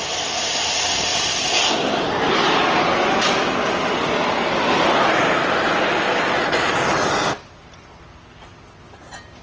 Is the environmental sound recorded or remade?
recorded